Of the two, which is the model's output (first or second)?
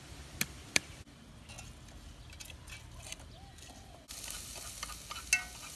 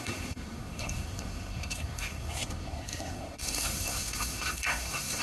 second